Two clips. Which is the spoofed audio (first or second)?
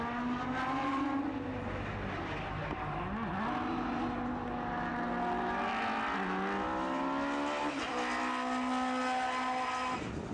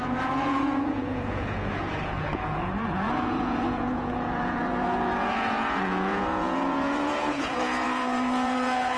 second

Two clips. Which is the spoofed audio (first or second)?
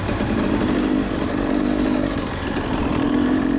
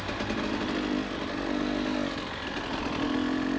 first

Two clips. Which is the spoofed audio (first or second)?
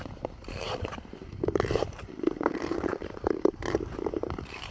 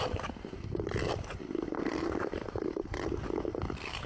first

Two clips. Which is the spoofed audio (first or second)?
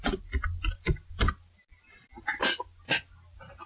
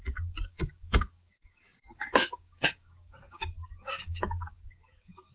second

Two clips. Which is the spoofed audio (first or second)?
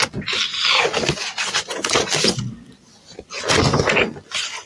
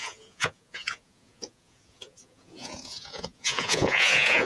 second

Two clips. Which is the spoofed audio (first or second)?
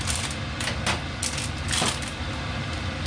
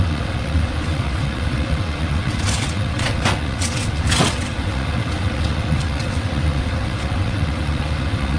second